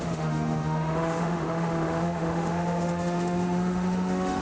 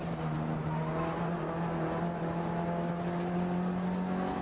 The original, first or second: second